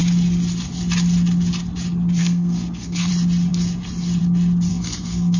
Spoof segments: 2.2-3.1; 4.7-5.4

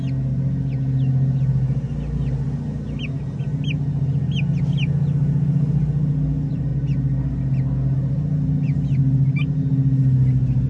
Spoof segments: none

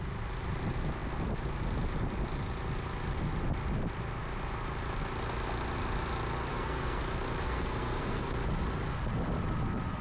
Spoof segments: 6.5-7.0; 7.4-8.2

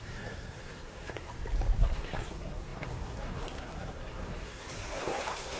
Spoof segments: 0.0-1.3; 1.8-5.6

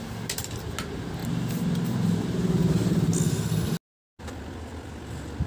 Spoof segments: none

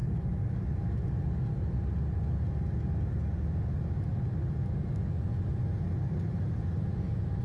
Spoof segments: none